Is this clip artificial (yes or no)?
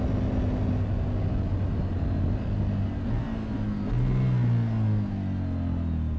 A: no